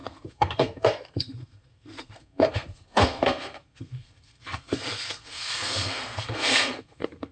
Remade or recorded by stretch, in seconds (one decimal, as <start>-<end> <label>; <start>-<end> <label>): 0.0-7.3 remade